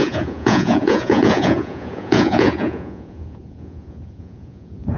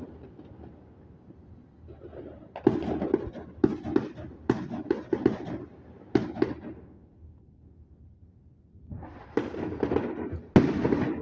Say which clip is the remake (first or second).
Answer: first